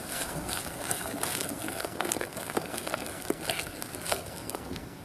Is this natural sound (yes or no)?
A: no